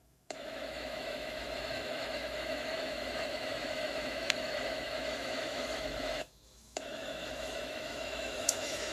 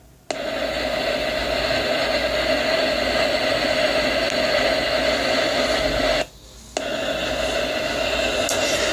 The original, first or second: second